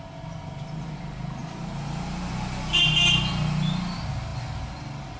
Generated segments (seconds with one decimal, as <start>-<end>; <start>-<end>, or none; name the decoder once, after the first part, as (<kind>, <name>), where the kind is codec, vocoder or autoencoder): none